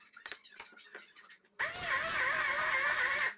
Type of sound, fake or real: fake